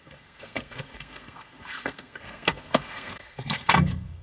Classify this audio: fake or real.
fake